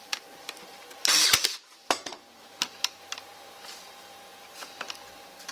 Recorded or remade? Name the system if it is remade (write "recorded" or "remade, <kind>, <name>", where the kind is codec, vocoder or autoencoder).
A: remade, vocoder, BigVGAN v2